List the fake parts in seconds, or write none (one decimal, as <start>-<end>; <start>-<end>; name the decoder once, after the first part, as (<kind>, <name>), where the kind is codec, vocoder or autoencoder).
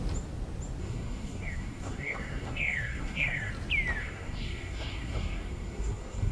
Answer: 0.8-3.5 (codec, SNAC); 4.0-6.3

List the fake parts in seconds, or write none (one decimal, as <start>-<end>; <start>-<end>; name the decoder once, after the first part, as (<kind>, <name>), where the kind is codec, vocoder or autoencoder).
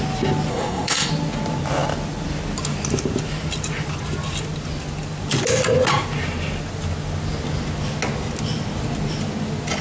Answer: 0.5-1.1 (codec, SNAC)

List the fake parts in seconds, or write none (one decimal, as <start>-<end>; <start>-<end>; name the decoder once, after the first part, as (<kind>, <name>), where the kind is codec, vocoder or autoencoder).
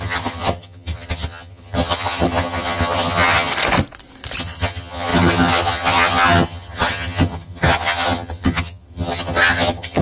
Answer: 0.0-3.5 (vocoder, HiFi-GAN); 4.4-10.0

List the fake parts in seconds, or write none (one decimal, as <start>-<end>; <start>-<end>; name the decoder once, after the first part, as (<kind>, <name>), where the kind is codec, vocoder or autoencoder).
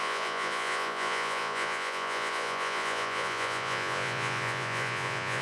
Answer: 0.0-5.4 (vocoder, Vocos)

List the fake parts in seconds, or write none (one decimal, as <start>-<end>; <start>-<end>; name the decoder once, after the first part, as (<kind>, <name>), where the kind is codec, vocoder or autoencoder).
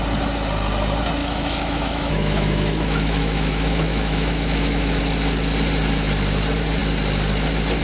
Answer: 1.2-5.0 (autoencoder, DAC-VAE)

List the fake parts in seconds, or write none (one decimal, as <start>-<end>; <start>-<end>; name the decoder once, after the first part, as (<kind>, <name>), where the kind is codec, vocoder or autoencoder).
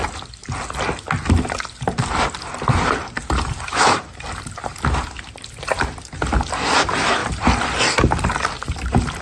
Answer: 7.2-7.8 (vocoder, BigVGAN v2)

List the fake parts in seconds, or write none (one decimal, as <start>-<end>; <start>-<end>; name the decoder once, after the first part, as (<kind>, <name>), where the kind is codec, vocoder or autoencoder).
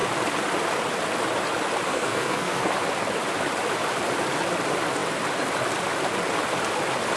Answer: 1.9-2.7 (codec, SNAC)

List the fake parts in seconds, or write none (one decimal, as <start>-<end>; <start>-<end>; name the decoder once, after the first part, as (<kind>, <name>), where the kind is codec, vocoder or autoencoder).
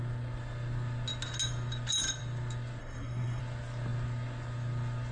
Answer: 2.8-3.4 (codec, SNAC)